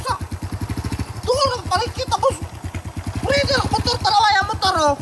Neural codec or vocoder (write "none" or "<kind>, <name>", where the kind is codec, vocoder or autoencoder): none